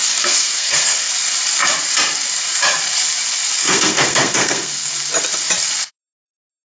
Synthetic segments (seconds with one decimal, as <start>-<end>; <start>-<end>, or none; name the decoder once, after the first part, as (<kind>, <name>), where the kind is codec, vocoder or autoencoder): 0.0-1.1 (codec, SNAC); 3.6-4.9